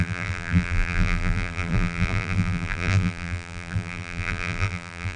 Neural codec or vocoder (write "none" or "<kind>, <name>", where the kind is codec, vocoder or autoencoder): vocoder, BigVGAN v2